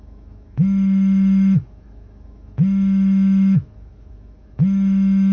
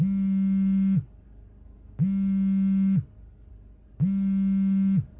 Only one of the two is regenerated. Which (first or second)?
first